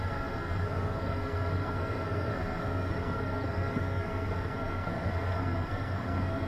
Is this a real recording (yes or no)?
no